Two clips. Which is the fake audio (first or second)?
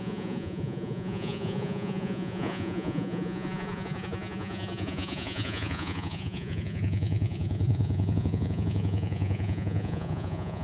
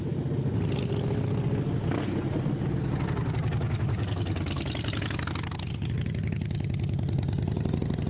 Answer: first